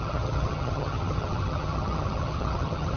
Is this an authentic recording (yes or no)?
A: no